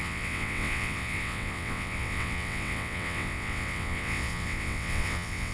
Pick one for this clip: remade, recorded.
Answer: remade